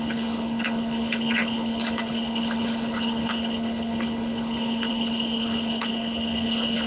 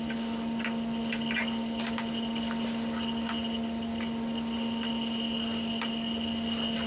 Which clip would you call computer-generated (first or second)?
first